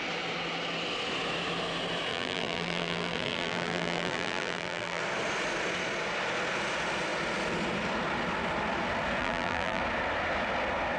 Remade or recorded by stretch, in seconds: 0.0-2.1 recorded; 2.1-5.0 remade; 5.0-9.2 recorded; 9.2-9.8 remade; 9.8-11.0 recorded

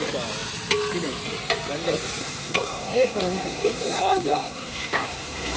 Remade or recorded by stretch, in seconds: 0.0-2.2 recorded; 2.2-5.6 remade

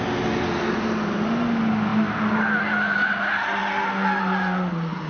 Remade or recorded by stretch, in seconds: 0.0-5.1 recorded

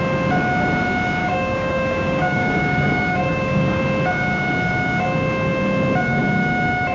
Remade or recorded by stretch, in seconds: 0.0-1.2 recorded; 1.2-3.8 remade; 3.8-6.9 recorded

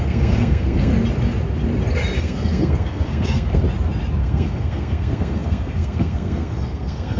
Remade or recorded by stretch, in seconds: 0.0-0.9 remade; 0.9-2.2 recorded; 2.2-3.6 remade; 3.6-4.2 recorded; 4.2-7.2 remade

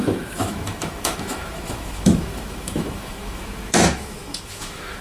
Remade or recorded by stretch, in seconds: 0.0-5.0 remade